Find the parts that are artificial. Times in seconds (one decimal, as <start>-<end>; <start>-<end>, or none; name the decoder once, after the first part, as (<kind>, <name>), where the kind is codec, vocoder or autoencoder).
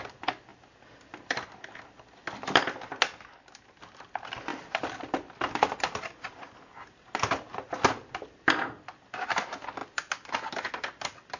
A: 4.5-5.3 (vocoder, BigVGAN v2)